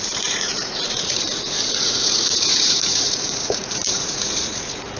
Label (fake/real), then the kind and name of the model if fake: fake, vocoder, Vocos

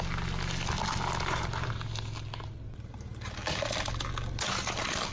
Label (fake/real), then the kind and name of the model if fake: real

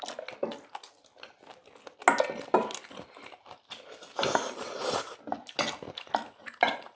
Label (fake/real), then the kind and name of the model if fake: real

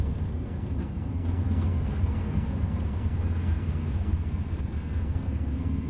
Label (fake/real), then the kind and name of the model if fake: fake, codec, SNAC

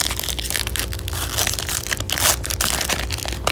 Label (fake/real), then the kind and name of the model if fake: real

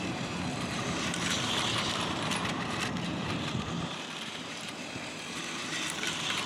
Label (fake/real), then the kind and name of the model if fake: fake, vocoder, BigVGAN v2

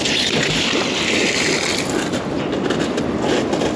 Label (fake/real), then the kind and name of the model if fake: real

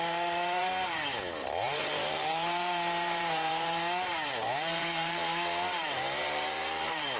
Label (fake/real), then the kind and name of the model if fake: fake, vocoder, BigVGAN v2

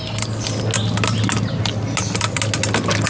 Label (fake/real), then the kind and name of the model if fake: real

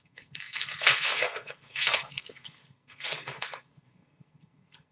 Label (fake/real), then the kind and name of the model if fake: fake, codec, SNAC